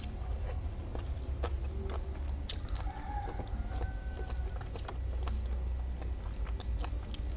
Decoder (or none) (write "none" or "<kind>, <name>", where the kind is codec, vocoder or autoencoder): none